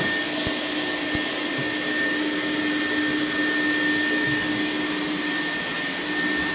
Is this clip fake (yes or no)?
no